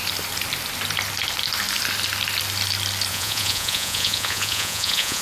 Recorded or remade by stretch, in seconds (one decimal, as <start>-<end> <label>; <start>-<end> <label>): 0.0-3.1 recorded; 3.1-5.2 remade